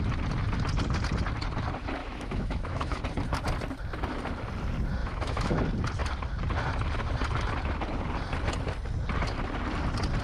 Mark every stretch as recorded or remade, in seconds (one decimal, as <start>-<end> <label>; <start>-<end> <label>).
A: 0.0-2.0 recorded; 2.0-3.0 remade; 3.0-5.0 recorded; 5.0-5.6 remade; 5.6-10.2 recorded